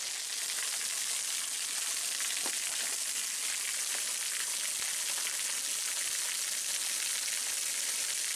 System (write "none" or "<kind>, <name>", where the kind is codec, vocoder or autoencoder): none